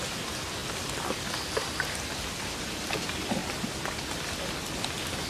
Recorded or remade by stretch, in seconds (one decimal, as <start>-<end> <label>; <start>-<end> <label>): 0.0-3.4 remade; 3.4-4.1 recorded; 4.1-5.3 remade